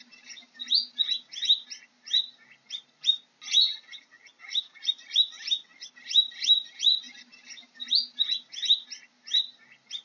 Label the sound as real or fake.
real